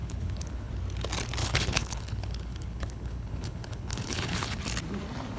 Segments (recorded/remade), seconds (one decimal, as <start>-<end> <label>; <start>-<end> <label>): 0.0-0.7 remade; 0.7-1.4 recorded; 1.4-4.6 remade; 4.6-5.4 recorded